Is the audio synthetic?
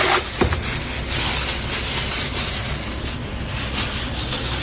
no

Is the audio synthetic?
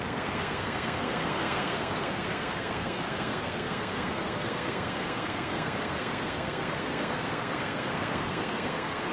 yes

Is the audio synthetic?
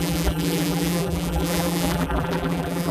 yes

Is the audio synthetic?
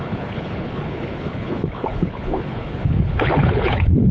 yes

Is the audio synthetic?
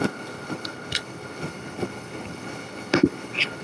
yes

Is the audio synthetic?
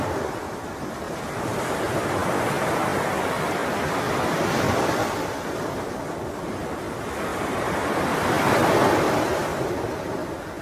no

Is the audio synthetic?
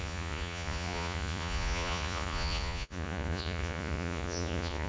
yes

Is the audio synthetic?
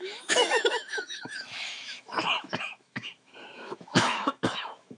yes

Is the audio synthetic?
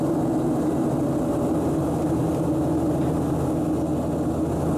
no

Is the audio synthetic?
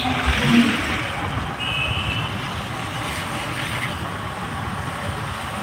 no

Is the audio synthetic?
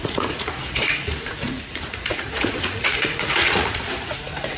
yes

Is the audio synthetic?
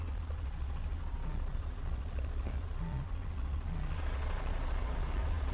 yes